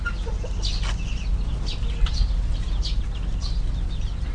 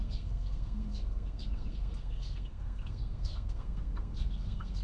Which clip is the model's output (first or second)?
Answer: second